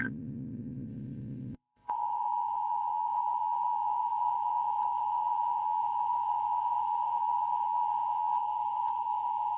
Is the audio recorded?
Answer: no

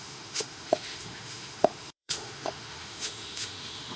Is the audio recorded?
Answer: no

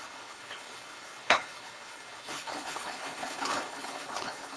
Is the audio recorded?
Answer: no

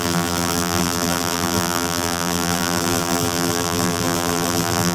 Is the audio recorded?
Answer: no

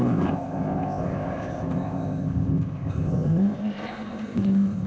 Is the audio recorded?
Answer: no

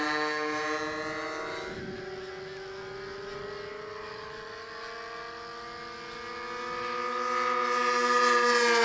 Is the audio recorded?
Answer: yes